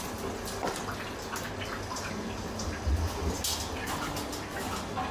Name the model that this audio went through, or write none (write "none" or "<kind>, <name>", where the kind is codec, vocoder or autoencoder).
none